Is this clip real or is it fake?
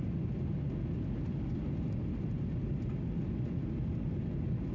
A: real